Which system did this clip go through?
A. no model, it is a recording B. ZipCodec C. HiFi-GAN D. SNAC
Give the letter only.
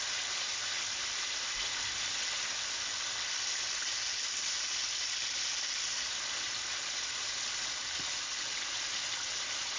A